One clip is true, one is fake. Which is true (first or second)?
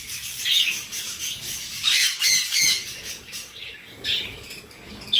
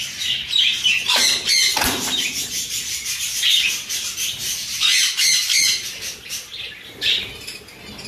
second